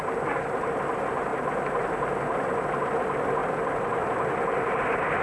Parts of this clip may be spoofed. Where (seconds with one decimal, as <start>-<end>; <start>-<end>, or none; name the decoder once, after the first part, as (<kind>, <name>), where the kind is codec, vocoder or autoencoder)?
none